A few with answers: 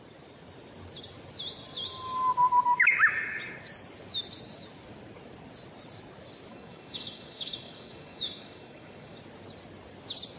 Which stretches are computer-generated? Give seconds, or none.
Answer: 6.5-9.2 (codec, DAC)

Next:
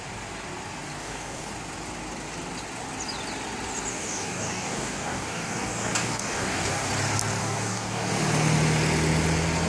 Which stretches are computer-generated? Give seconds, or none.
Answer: 1.0-1.5 (codec, DAC); 3.9-6.9; 7.4-8.1

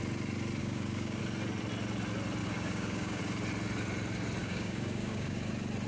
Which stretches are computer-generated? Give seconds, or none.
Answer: 0.6-1.2 (codec, DAC); 2.4-3.2; 4.4-5.5

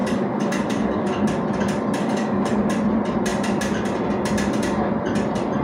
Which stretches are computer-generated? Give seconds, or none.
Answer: 0.0-1.1 (codec, DAC); 2.0-2.7

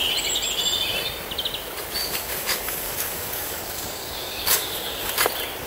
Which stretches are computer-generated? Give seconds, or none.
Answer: 2.0-5.1 (codec, DAC)